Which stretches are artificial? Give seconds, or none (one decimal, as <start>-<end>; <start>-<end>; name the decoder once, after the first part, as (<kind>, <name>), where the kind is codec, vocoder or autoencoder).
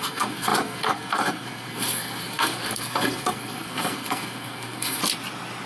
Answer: 0.0-5.0 (codec, SNAC)